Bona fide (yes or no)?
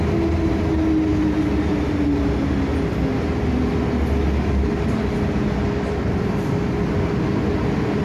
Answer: yes